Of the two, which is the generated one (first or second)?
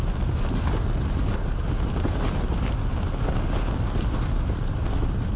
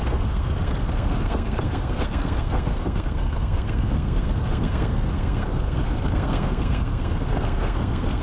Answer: second